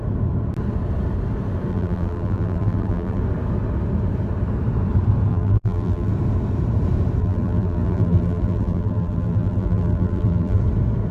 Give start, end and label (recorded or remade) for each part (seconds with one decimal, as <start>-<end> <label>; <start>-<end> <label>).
0.0-1.7 recorded; 1.7-3.2 remade; 3.2-5.3 recorded; 5.3-6.1 remade; 6.1-7.2 recorded; 7.2-10.6 remade; 10.6-11.1 recorded